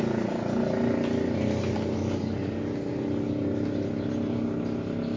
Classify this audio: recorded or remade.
recorded